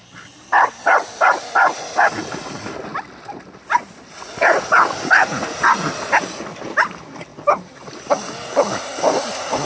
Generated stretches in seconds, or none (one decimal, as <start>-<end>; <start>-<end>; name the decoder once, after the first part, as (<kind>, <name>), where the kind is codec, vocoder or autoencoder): 2.9-4.0 (vocoder, BigVGAN v2); 7.3-8.1